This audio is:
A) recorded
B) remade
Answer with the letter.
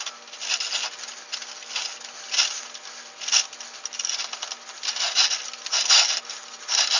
A